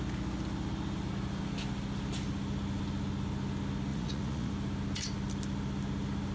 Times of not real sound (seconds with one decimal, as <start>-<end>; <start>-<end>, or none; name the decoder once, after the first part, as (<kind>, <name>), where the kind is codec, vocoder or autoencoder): 3.9-4.5 (vocoder, Vocos)